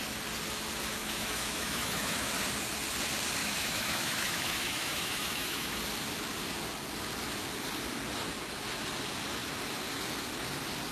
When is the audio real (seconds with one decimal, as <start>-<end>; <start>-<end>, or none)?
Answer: 0.0-1.0; 2.3-3.4; 5.8-10.9